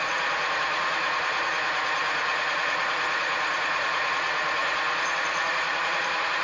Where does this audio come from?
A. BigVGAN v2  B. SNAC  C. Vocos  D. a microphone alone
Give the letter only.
C